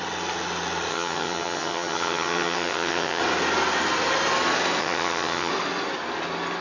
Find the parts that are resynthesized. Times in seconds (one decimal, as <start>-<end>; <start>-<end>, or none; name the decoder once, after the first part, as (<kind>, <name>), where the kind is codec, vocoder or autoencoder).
0.9-3.2 (vocoder, HiFi-GAN); 4.8-5.5